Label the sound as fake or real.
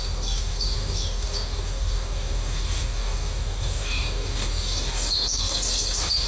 fake